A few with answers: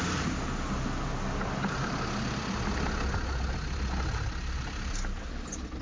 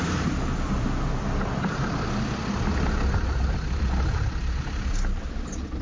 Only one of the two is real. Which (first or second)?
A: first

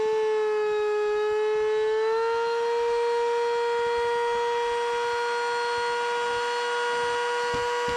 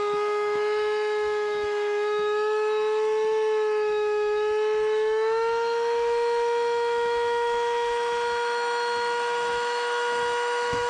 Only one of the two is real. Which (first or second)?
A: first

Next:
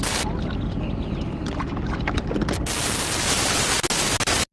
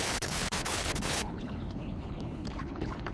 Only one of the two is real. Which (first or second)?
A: first